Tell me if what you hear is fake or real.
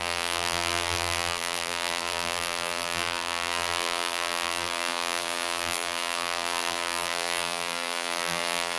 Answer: fake